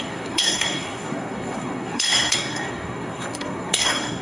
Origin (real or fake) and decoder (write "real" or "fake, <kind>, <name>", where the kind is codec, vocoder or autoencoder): fake, codec, SNAC